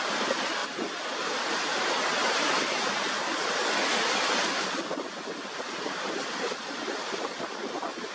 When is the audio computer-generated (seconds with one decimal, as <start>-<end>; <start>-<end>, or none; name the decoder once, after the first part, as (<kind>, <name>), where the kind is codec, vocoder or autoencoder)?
none